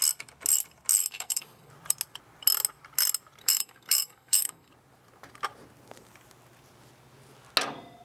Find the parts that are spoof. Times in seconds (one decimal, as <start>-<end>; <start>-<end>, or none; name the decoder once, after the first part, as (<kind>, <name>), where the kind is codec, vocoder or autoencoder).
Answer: 1.0-1.7 (codec, SNAC); 3.4-4.7